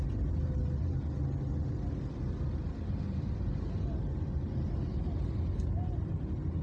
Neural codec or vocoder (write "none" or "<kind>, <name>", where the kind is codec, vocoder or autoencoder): none